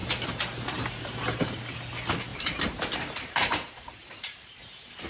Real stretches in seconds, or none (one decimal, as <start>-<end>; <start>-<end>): 1.6-2.3